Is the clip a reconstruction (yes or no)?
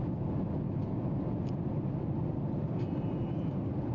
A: no